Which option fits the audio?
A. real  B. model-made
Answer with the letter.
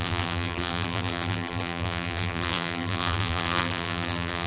B